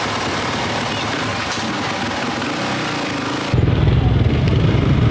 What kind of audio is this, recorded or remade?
recorded